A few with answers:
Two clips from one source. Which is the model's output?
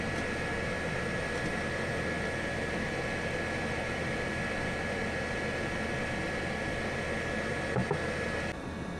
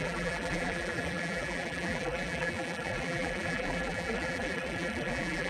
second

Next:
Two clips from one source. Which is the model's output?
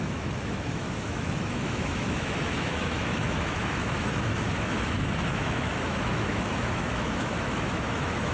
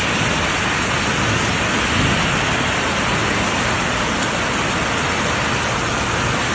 first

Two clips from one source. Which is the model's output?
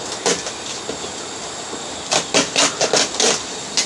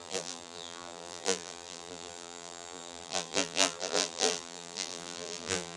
second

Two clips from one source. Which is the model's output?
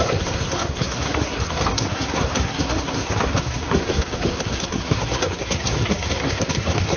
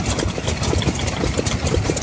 first